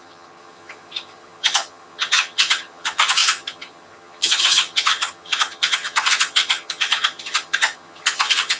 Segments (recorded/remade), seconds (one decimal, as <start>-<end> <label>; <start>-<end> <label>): 0.0-8.6 remade